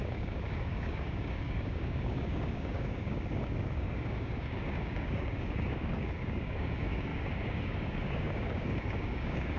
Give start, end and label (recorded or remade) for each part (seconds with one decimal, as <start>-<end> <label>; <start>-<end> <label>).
0.0-9.6 remade